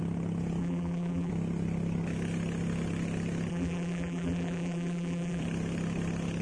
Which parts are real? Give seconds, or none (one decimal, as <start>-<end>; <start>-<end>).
0.0-0.6; 1.3-3.5; 5.4-6.4